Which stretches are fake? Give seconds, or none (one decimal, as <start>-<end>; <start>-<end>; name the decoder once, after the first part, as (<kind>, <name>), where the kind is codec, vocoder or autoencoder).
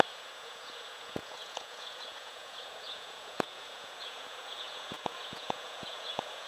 0.0-6.5 (vocoder, Vocos)